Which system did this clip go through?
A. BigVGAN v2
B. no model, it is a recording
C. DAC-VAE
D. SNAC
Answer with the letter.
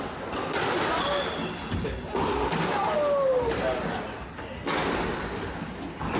B